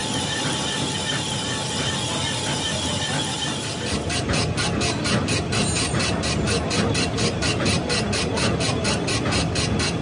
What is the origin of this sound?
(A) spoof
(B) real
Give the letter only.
B